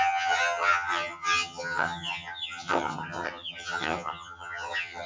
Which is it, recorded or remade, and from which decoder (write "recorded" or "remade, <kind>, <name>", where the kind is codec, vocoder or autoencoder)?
remade, vocoder, HiFi-GAN